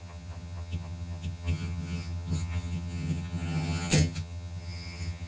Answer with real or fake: fake